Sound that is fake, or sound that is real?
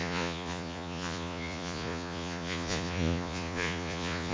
fake